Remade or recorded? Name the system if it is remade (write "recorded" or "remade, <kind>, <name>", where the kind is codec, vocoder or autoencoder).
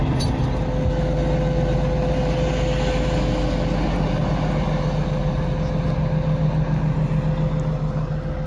recorded